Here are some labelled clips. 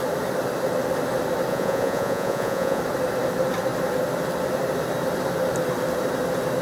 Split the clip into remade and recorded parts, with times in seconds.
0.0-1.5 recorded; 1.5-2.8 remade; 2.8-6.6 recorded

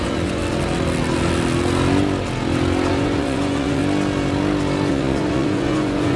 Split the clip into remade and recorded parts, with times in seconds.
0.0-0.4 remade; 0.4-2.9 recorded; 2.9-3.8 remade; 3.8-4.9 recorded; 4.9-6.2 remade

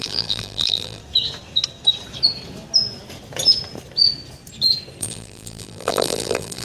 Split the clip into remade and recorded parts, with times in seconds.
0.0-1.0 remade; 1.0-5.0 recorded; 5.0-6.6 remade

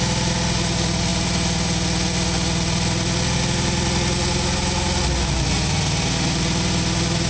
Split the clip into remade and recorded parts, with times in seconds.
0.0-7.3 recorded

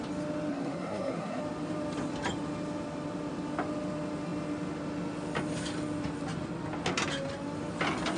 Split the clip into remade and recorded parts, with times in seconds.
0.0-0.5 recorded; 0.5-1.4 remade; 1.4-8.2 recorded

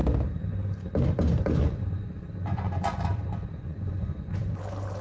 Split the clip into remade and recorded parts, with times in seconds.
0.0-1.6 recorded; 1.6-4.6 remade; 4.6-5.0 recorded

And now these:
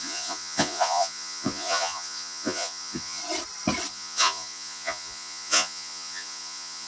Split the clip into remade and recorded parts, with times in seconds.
0.0-3.2 remade; 3.2-3.9 recorded; 3.9-6.9 remade